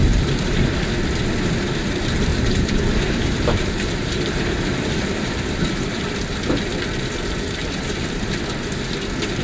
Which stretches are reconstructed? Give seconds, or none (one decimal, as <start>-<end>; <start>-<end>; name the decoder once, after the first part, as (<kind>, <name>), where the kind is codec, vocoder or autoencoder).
0.0-0.7 (vocoder, BigVGAN v2); 2.3-6.0; 7.6-8.3